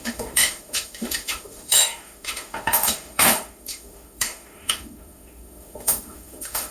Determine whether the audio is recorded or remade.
remade